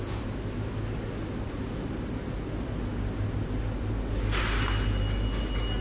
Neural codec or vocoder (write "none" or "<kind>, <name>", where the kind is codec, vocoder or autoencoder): none